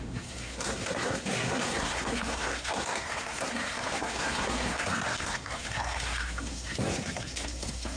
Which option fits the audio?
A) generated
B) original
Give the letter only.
A